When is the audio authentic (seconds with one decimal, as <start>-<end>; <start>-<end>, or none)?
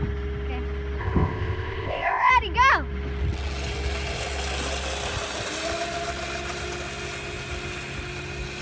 0.0-1.0; 2.3-8.6